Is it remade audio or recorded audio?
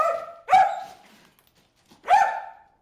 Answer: recorded